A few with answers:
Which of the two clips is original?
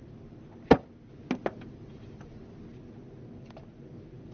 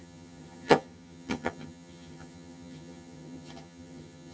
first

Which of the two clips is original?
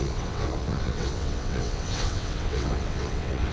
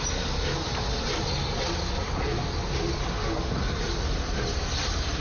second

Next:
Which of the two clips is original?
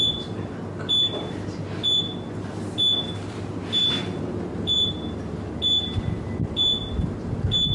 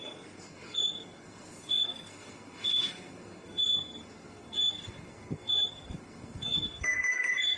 first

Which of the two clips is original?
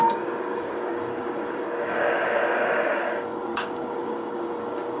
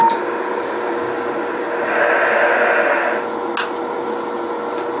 second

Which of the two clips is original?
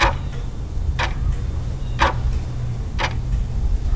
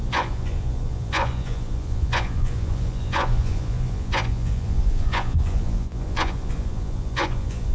first